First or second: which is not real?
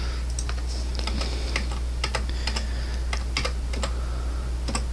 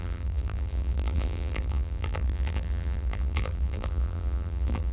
second